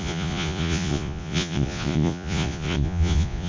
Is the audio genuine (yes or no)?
no